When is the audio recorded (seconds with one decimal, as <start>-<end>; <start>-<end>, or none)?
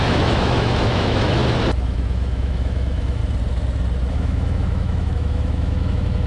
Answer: 1.4-1.9; 3.2-4.1